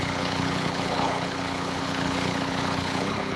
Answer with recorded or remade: remade